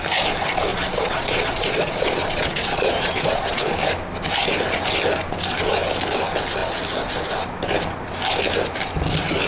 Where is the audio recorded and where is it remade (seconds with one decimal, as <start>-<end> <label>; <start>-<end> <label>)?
0.0-0.7 recorded; 0.7-3.7 remade; 3.7-9.5 recorded